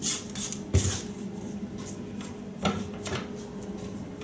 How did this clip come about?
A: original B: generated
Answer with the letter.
A